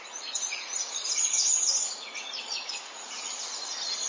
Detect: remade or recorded remade